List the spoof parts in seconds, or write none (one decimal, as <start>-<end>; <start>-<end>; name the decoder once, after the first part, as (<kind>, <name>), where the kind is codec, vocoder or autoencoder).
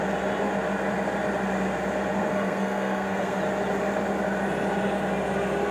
2.2-3.4 (codec, SNAC)